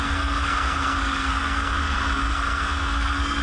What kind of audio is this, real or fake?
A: fake